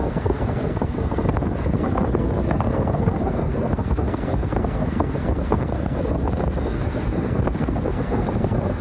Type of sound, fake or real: fake